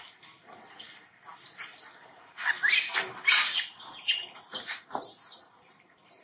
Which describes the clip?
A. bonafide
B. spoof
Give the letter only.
B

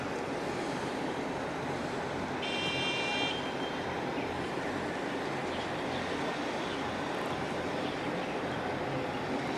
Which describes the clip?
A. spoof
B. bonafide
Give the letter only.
A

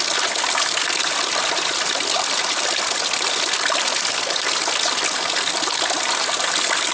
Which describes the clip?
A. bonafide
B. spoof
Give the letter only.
B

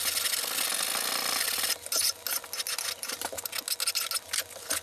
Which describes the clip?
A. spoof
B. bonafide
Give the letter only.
B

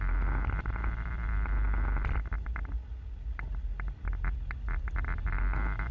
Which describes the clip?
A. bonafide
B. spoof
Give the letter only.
A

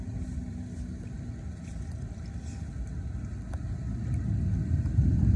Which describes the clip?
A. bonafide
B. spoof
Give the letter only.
A